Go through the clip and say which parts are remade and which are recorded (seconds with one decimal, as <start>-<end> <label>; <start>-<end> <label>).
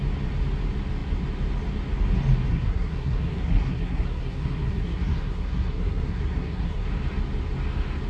0.0-2.5 recorded; 2.5-6.9 remade; 6.9-8.1 recorded